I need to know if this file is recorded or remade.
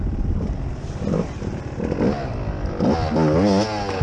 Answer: recorded